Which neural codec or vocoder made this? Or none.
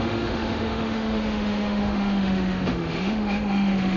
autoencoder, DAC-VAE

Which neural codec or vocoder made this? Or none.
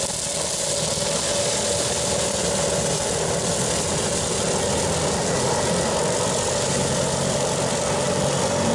none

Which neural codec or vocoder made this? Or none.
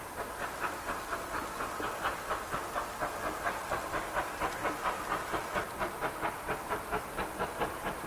none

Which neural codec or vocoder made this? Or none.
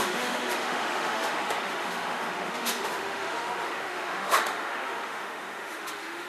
autoencoder, DAC-VAE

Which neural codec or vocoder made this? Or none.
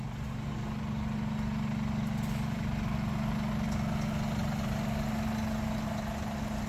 none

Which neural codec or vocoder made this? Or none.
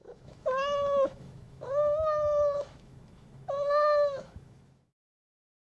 autoencoder, DAC-VAE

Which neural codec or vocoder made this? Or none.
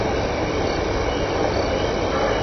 none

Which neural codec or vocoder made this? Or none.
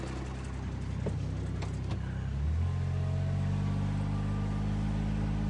none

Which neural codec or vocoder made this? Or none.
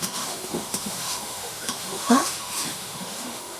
autoencoder, DAC-VAE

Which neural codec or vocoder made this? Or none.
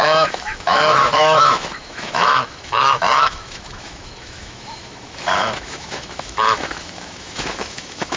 autoencoder, DAC-VAE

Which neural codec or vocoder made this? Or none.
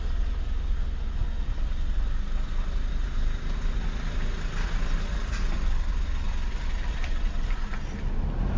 none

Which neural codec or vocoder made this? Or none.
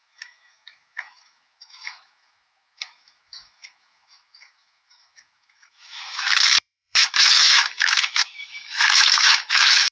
autoencoder, DAC-VAE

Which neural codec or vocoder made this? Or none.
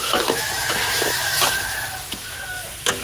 autoencoder, DAC-VAE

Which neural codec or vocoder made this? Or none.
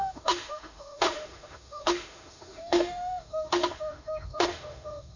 autoencoder, DAC-VAE